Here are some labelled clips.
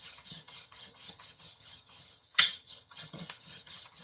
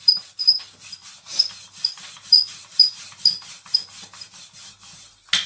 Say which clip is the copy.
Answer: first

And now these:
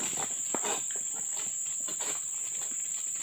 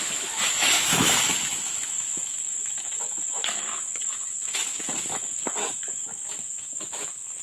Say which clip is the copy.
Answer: second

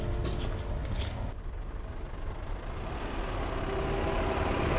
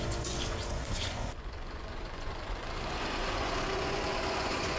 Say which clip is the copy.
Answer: second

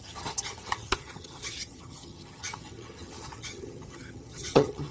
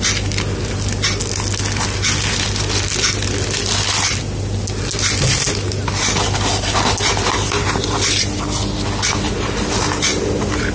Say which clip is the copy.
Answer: first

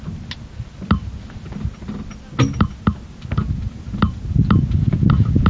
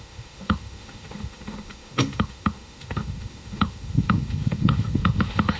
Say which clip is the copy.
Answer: second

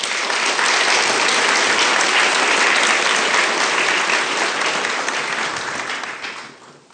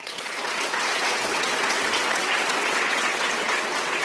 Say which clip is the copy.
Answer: second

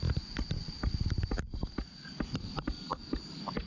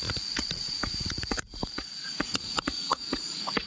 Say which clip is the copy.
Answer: second